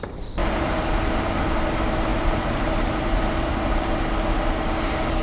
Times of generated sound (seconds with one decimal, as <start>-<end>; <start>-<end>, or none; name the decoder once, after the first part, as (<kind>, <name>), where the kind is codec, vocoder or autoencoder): 0.4-1.3 (vocoder, BigVGAN v2); 2.1-4.0